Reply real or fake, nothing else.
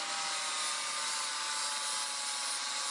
real